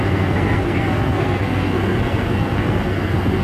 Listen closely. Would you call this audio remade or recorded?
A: remade